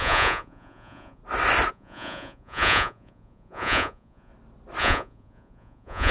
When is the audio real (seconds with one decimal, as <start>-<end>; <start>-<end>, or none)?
1.2-1.7; 4.3-4.8